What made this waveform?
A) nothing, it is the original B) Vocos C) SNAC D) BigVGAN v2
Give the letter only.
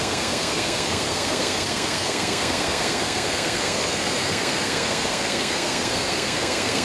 C